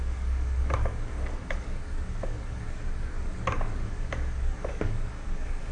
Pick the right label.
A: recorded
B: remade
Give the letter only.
B